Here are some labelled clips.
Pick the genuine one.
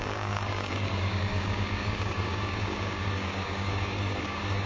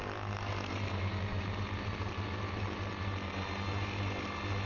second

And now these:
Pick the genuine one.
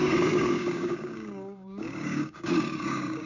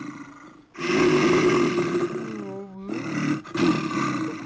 second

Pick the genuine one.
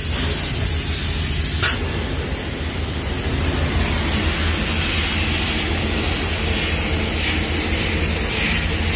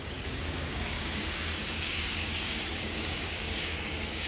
first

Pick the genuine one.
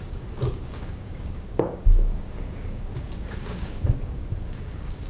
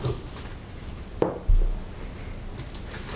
second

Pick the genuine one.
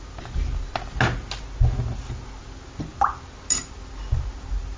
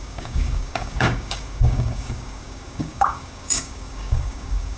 first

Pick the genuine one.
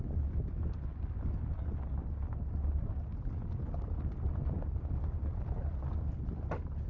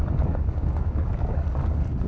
first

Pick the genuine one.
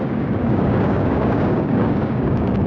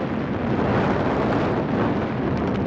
second